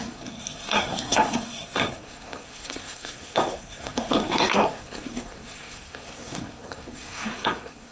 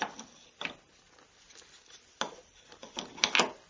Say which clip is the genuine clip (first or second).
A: second